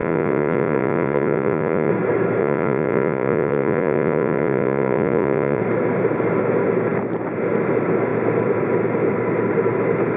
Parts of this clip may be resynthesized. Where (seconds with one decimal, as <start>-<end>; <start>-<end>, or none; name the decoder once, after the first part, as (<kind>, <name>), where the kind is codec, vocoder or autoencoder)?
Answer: 0.0-1.9 (vocoder, Vocos); 2.4-5.6